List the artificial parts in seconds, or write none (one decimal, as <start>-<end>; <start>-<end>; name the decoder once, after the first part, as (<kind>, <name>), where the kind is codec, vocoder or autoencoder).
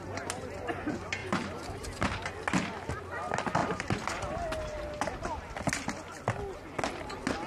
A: 1.2-2.3 (vocoder, BigVGAN v2)